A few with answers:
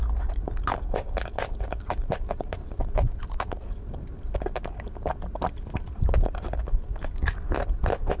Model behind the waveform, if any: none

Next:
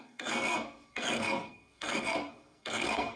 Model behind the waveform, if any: codec, SNAC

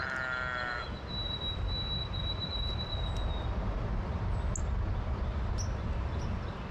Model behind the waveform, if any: none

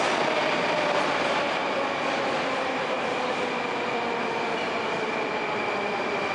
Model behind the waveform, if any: none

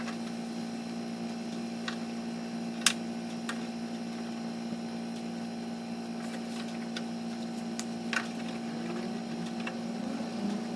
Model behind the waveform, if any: none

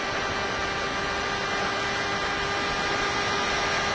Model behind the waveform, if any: none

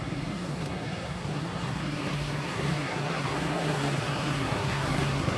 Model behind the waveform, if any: codec, SNAC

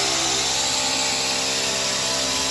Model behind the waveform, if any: none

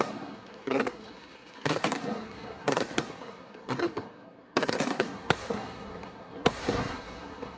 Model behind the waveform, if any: codec, SNAC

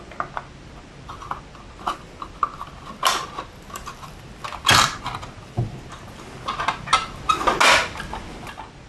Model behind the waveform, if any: none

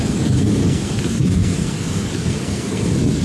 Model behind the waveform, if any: codec, SNAC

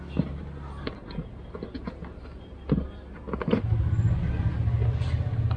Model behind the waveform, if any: none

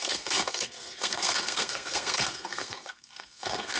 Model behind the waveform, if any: codec, SNAC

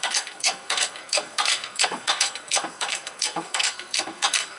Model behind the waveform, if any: codec, SNAC